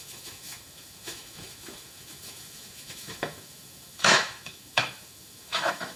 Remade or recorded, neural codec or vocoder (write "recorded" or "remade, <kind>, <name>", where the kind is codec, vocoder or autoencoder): remade, autoencoder, DAC-VAE